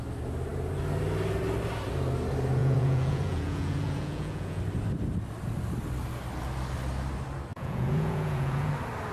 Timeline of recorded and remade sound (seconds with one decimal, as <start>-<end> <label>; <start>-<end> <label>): 0.0-2.6 recorded; 2.6-4.6 remade; 4.6-7.5 recorded; 7.5-8.7 remade; 8.7-9.1 recorded